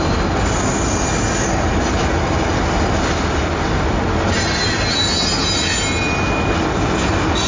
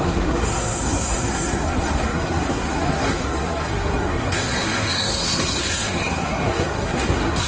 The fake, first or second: second